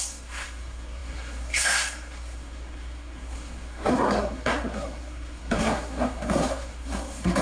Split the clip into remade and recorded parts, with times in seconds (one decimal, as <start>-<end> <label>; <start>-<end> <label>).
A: 0.0-7.4 remade